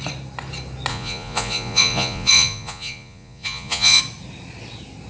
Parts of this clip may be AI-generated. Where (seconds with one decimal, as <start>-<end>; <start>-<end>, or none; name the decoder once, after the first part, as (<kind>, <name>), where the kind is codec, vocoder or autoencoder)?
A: 0.9-4.0 (vocoder, Vocos)

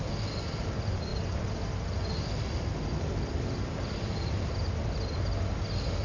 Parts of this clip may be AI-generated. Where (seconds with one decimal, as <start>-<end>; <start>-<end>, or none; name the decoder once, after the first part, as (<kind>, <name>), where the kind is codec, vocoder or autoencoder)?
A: none

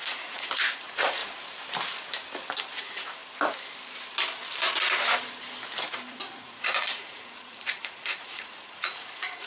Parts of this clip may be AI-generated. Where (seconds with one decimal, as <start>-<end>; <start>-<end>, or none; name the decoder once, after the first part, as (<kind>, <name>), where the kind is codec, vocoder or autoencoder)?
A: 0.0-1.2 (vocoder, Vocos); 2.8-3.2; 6.1-9.5

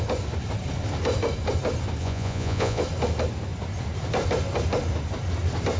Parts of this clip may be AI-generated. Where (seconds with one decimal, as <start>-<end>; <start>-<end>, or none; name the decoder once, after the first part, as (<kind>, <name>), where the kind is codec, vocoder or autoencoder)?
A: 2.0-2.8 (vocoder, Vocos)